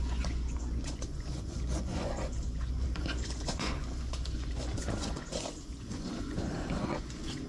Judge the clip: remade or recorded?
remade